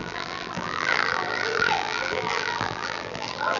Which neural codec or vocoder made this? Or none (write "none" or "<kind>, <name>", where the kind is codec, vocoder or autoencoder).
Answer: vocoder, BigVGAN v2